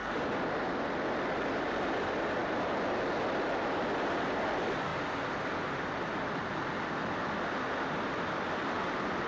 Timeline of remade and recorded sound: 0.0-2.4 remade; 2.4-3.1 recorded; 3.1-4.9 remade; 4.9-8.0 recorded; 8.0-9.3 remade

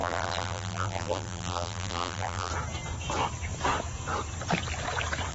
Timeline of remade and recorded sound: 0.0-2.5 remade; 2.5-5.3 recorded

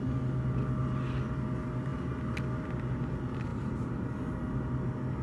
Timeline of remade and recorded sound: 0.0-3.5 recorded; 3.5-4.1 remade; 4.1-5.2 recorded

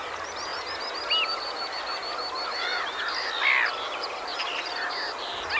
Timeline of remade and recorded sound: 0.0-5.6 recorded

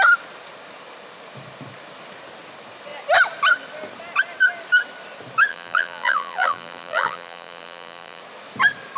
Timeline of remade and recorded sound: 0.0-5.5 recorded; 5.5-8.2 remade; 8.2-9.0 recorded

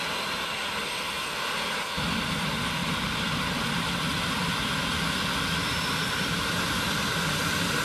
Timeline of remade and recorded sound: 0.0-7.8 recorded